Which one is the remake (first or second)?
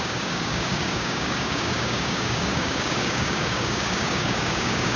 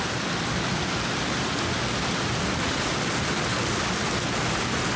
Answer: first